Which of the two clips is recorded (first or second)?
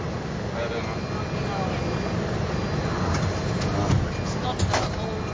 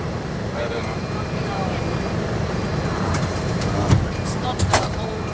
first